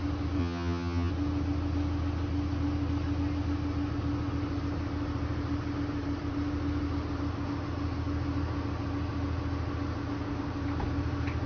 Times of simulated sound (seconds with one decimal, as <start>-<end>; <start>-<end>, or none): 0.4-1.1